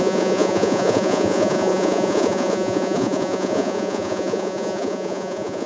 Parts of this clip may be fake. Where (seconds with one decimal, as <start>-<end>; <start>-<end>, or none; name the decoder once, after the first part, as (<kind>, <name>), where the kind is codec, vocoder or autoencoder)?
0.0-5.7 (vocoder, Vocos)